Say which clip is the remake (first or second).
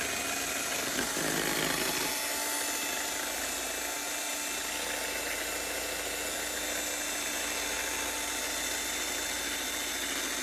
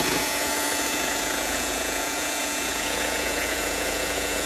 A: second